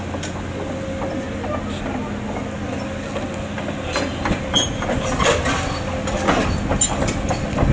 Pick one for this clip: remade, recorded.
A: recorded